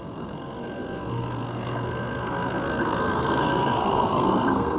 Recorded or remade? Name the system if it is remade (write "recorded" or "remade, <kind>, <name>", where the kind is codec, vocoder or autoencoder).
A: remade, codec, SNAC